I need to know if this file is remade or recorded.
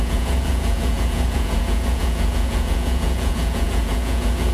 remade